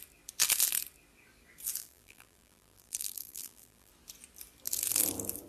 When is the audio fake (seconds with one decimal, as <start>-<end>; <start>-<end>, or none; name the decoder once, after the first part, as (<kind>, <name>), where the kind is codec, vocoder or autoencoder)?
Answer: 1.8-3.9 (vocoder, BigVGAN v2)